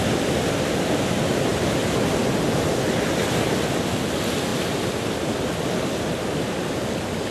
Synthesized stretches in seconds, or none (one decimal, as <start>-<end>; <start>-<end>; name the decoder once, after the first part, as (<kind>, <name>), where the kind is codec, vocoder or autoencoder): none